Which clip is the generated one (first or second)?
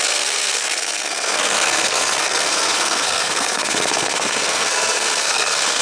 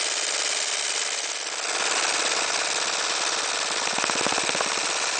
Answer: first